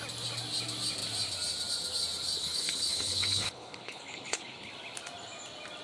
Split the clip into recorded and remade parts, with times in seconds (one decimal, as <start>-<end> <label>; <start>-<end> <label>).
0.0-2.4 recorded; 2.4-4.7 remade; 4.7-5.8 recorded